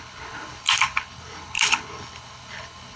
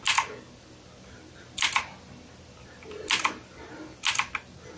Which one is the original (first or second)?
second